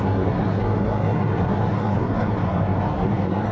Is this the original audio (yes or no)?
no